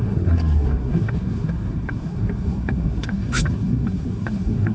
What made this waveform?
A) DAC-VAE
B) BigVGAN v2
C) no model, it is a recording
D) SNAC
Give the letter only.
D